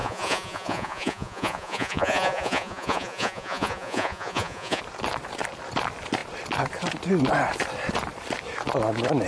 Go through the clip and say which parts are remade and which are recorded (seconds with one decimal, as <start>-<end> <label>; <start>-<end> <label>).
0.0-4.8 remade; 4.8-9.3 recorded